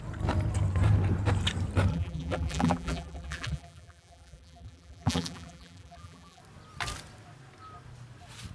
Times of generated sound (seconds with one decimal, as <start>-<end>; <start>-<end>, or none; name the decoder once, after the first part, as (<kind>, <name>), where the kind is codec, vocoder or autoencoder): 1.9-6.4 (vocoder, BigVGAN v2)